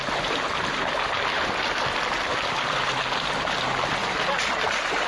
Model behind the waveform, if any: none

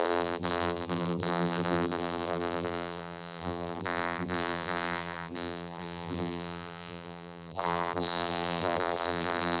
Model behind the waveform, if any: vocoder, BigVGAN v2